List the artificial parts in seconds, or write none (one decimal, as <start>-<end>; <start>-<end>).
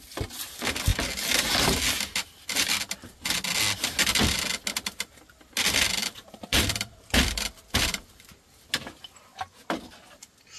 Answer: 6.0-8.7